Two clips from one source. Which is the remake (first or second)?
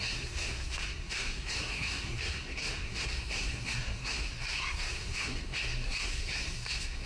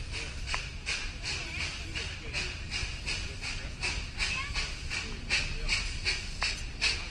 first